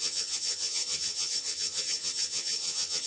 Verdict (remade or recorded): remade